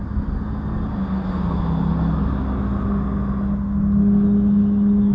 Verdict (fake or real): real